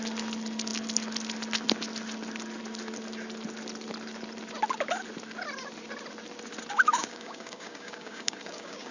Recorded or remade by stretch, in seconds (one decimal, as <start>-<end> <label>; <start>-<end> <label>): 0.0-7.0 recorded; 7.0-8.9 remade